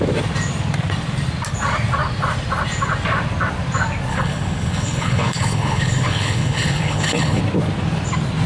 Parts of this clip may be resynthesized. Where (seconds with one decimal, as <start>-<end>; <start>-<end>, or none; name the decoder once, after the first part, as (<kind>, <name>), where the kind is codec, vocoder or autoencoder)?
4.1-7.4 (codec, HILCodec)